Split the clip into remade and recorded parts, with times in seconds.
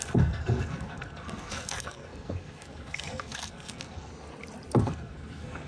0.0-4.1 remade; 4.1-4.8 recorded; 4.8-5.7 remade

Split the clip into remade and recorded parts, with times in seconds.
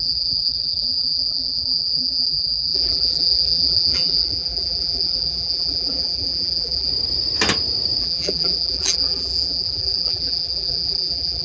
0.0-6.9 remade; 6.9-8.0 recorded; 8.0-11.4 remade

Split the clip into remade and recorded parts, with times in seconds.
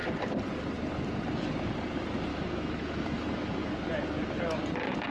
0.0-2.3 recorded; 2.3-3.7 remade; 3.7-5.1 recorded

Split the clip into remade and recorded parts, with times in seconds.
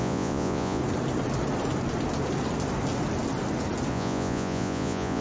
0.0-0.8 remade; 0.8-3.9 recorded; 3.9-5.2 remade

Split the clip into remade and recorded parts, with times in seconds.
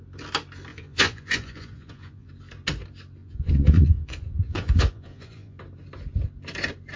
0.0-0.7 recorded; 0.7-2.3 remade; 2.3-3.2 recorded; 3.2-5.6 remade; 5.6-7.0 recorded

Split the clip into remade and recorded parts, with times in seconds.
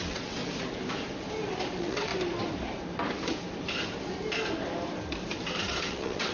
0.0-0.4 remade; 0.4-1.7 recorded; 1.7-2.1 remade; 2.1-5.6 recorded; 5.6-6.3 remade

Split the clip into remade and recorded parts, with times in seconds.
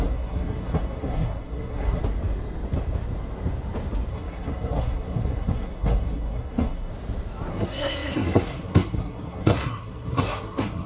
0.0-2.0 remade; 2.0-4.1 recorded; 4.1-6.9 remade; 6.9-7.5 recorded; 7.5-10.9 remade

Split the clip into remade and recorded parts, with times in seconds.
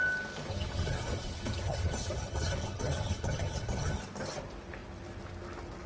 0.0-0.5 recorded; 0.5-4.0 remade; 4.0-5.9 recorded